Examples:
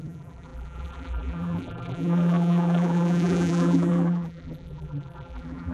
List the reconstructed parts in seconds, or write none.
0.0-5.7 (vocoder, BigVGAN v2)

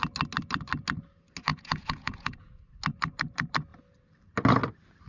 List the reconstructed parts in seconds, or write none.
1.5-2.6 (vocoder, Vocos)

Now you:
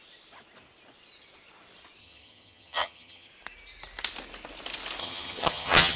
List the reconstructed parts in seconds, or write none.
2.0-3.3 (vocoder, HiFi-GAN); 5.0-6.0